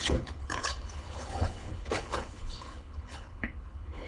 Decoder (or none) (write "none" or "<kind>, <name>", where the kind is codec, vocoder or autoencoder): codec, HILCodec